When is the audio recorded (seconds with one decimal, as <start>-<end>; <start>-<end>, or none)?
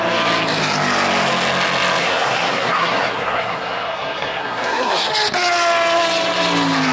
0.0-2.0; 5.1-6.9